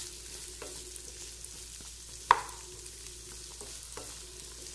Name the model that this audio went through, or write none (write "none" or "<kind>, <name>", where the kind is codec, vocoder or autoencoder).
none